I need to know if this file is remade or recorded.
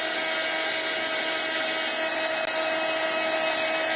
recorded